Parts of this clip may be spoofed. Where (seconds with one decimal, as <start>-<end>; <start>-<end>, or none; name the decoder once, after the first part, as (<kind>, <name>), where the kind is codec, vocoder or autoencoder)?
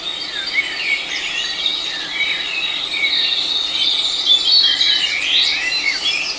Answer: none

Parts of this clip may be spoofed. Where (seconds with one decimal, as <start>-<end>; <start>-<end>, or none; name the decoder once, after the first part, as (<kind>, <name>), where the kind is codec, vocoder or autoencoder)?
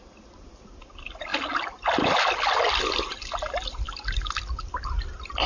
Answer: none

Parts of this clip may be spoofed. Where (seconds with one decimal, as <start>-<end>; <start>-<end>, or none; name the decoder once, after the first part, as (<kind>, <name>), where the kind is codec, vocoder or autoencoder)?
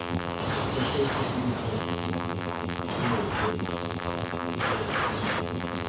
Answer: 0.0-0.4 (vocoder, BigVGAN v2); 1.8-2.9; 3.5-4.6; 5.4-5.9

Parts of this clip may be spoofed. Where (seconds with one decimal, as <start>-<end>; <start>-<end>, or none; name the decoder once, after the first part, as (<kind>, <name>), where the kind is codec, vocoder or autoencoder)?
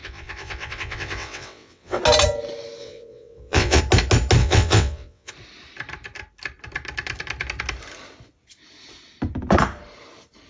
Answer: 0.0-2.0 (vocoder, WaveNeXt); 2.8-3.8; 4.4-5.3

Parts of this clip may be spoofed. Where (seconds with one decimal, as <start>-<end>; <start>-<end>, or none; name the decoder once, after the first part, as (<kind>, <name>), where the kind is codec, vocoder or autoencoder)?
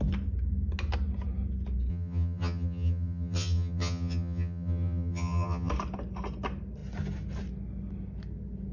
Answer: 1.9-5.7 (vocoder, HiFi-GAN)